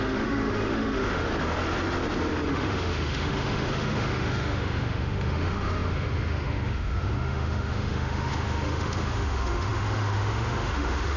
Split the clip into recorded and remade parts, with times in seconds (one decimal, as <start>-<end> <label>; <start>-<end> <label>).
0.0-1.3 remade; 1.3-2.5 recorded; 2.5-11.2 remade